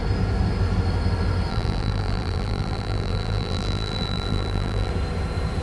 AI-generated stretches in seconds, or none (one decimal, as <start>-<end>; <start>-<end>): 1.5-4.9